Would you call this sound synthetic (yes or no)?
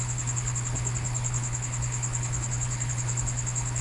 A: yes